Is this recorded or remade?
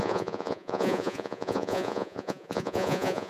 remade